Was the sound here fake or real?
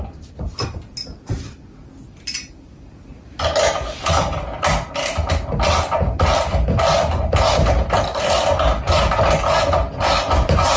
real